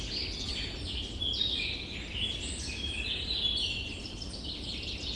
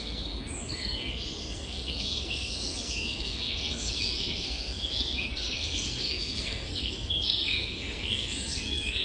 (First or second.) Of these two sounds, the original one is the first